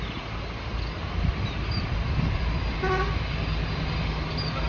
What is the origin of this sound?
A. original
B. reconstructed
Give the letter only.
A